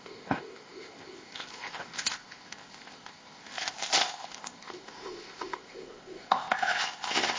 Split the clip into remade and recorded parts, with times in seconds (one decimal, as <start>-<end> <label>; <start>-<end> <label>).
0.0-7.4 remade